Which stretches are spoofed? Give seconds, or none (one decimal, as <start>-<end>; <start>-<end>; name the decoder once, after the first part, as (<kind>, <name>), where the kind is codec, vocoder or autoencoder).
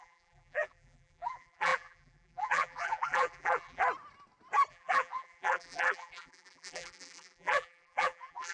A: 0.0-3.8 (vocoder, BigVGAN v2); 4.7-8.5